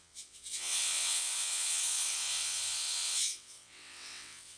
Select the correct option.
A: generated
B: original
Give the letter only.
A